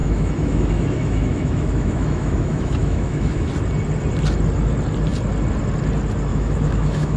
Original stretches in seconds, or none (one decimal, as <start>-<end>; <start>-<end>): 3.5-6.3